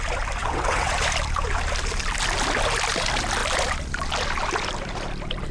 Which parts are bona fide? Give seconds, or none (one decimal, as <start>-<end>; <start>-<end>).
0.0-0.4; 0.9-5.5